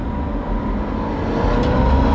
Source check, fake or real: real